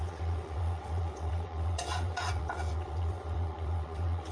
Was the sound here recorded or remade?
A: remade